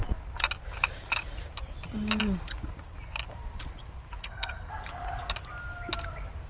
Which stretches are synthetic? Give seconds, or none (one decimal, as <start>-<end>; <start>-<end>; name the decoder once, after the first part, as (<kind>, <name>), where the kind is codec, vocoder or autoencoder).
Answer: 4.2-4.7 (codec, SNAC)